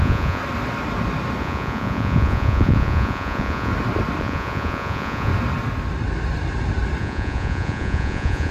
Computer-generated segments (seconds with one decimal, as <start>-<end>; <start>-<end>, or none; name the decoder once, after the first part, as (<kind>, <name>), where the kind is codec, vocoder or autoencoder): 0.0-0.4 (vocoder, Vocos); 1.4-3.7; 4.2-5.3; 7.0-8.5